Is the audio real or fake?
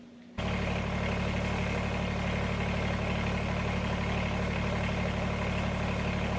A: real